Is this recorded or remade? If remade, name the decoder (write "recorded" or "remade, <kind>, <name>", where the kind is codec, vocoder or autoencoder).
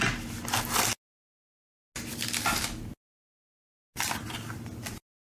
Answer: recorded